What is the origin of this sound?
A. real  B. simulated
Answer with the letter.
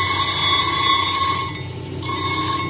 A